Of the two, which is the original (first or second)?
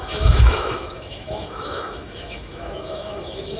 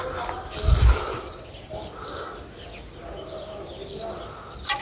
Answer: second